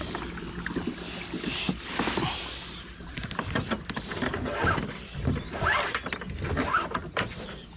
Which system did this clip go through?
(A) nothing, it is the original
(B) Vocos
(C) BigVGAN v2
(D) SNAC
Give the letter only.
A